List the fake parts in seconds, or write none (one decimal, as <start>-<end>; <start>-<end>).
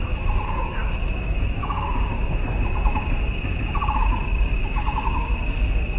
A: 0.0-6.0